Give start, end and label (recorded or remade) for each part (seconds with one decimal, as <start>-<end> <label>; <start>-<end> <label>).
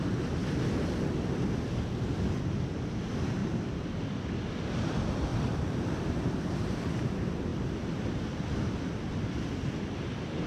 0.0-3.4 recorded; 3.4-4.2 remade; 4.2-5.3 recorded; 5.3-7.1 remade; 7.1-10.5 recorded